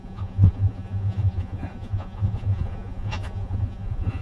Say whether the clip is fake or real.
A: fake